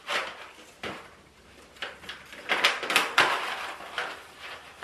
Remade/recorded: recorded